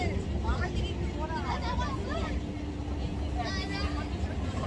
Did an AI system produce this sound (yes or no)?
no